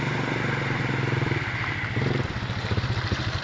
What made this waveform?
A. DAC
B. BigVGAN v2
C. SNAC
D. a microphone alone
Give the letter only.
B